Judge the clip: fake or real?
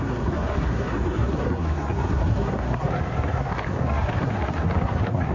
fake